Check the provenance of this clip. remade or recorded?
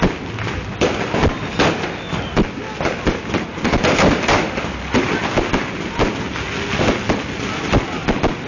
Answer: recorded